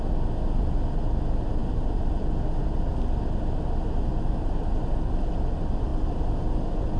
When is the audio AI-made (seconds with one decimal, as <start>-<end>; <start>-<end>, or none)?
none